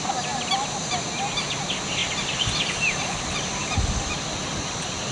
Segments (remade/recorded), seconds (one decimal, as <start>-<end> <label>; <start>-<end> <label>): 0.0-5.1 recorded